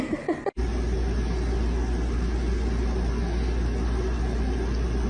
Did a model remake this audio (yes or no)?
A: no